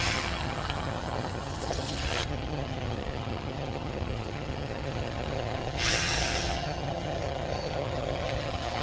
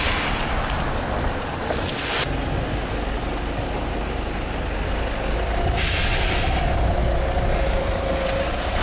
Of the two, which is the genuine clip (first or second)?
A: second